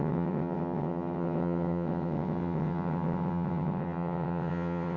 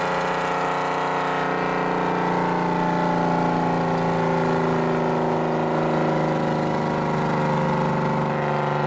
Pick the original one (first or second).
second